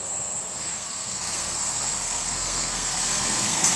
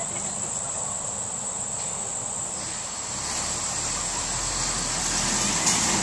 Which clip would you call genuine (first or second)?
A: second